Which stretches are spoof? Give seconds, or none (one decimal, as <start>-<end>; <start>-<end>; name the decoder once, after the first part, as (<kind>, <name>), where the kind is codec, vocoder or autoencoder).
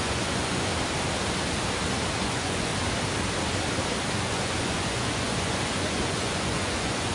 0.0-0.7 (vocoder, Vocos); 2.2-2.7; 4.1-7.1